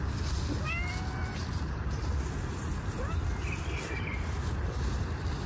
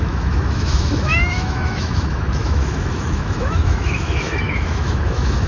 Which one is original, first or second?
first